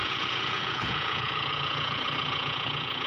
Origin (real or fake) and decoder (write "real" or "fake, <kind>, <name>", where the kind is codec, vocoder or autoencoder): fake, vocoder, Vocos